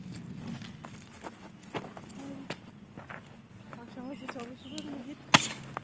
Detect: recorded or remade recorded